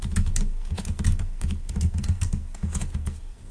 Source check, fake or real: fake